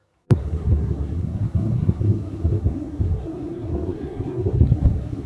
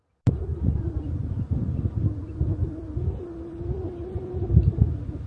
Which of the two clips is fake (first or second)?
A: first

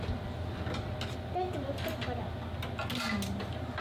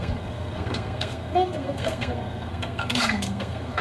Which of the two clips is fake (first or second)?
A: second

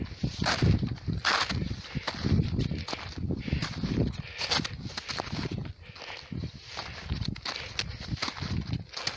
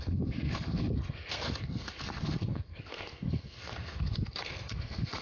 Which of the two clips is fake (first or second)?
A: second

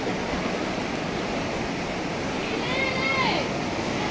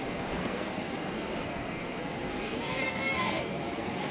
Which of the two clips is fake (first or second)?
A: second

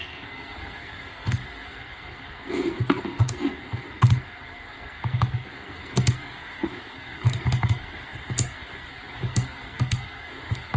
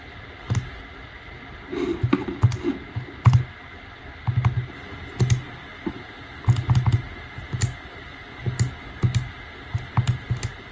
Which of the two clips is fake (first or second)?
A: first